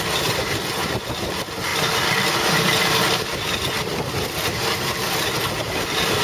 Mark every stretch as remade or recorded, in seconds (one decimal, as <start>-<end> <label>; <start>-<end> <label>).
0.0-1.7 recorded; 1.7-5.4 remade; 5.4-6.2 recorded